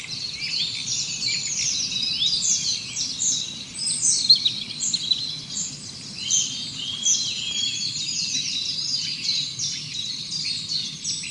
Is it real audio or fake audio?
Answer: real